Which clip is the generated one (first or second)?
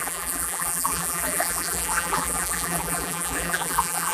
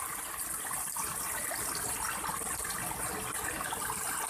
first